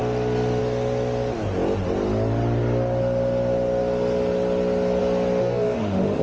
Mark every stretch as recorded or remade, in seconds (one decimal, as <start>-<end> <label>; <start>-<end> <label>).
0.0-5.4 recorded; 5.4-6.2 remade